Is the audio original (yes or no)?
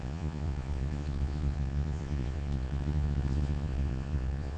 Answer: no